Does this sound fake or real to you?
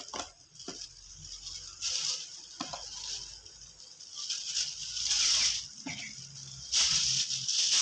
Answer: real